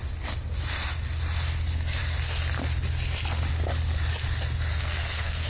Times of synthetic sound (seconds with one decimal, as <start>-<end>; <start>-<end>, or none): 4.7-5.5

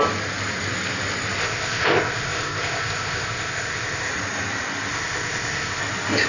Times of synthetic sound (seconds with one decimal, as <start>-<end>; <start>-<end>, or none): 1.4-4.1; 4.9-5.8

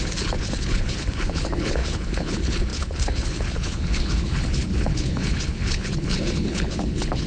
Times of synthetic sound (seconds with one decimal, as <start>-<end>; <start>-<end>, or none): 0.0-7.3